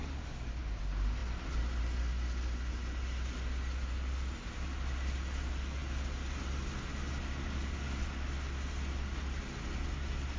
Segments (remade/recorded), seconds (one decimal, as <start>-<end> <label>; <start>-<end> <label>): 0.0-0.6 remade; 0.6-10.4 recorded